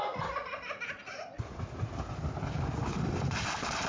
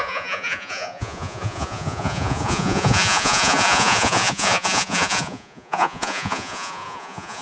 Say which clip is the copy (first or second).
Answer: second